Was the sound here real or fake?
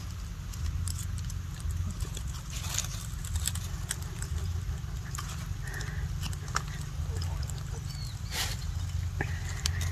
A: real